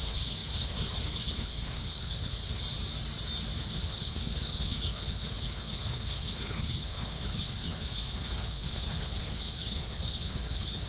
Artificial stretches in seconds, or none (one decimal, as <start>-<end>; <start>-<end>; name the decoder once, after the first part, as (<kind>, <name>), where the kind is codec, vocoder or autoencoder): 0.0-2.5 (codec, HILCodec); 3.6-10.9